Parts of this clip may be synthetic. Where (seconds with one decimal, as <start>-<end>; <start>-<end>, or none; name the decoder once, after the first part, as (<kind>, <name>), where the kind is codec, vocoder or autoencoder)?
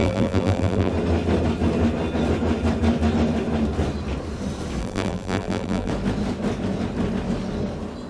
0.0-0.9 (vocoder, BigVGAN v2); 4.8-5.9